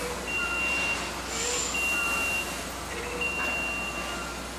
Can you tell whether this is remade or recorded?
recorded